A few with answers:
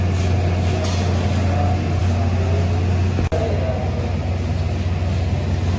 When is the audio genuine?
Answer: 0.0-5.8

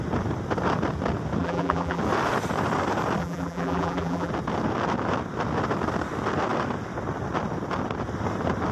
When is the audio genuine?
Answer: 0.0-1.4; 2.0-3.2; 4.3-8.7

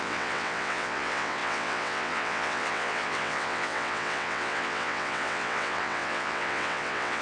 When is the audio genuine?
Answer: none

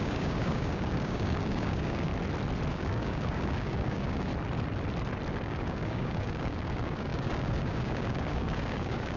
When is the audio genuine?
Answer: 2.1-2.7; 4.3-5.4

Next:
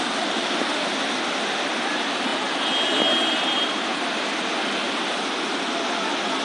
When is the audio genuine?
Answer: 0.0-6.4

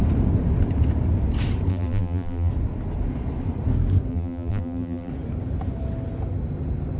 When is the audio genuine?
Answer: 0.0-1.7; 2.5-4.1; 5.1-7.0

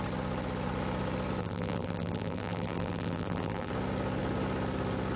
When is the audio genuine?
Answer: 0.0-1.4; 3.7-5.2

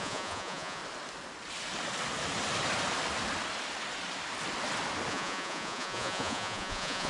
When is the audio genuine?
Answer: 0.8-5.1